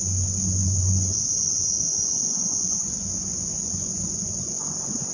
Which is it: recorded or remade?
remade